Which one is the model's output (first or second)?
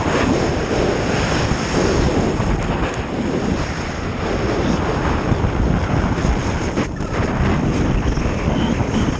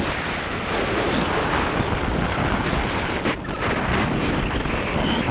first